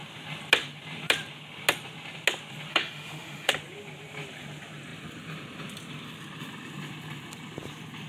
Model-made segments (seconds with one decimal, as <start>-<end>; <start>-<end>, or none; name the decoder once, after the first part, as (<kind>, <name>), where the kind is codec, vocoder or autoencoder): 2.7-3.5 (autoencoder, DAC-VAE)